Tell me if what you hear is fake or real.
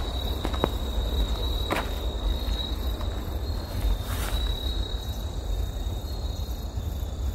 fake